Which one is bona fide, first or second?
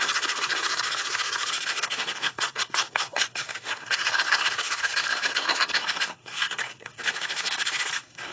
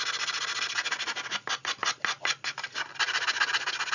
second